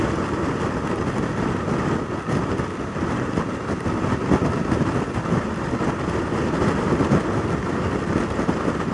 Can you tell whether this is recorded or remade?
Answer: recorded